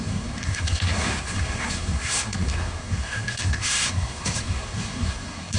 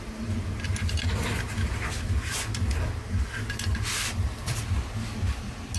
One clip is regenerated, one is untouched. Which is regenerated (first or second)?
first